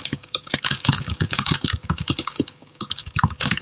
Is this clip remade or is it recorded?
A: remade